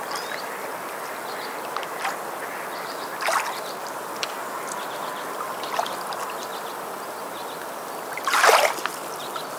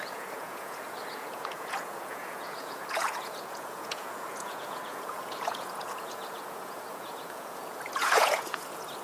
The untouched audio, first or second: first